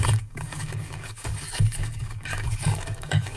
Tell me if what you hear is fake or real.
fake